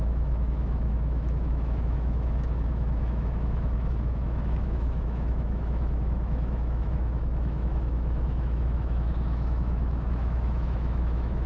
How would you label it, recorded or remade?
remade